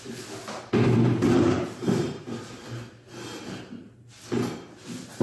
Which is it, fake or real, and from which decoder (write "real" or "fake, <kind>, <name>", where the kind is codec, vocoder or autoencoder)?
real